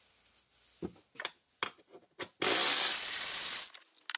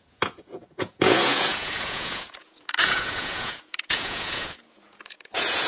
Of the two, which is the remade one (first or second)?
second